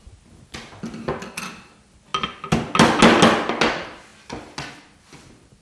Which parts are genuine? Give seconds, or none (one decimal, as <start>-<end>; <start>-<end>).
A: 0.0-5.6